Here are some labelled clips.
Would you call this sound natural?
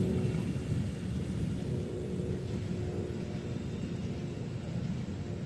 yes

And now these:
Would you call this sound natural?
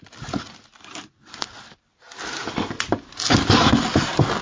yes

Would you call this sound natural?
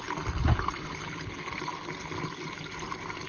yes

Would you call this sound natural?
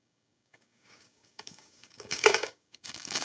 no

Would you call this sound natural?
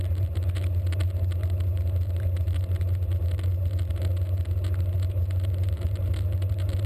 yes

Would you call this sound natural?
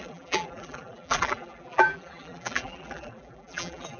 no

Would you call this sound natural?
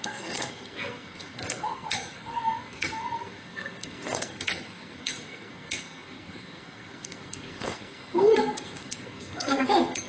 no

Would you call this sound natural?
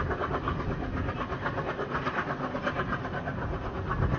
yes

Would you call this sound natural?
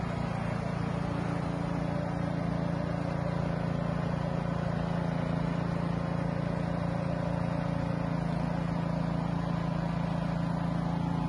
yes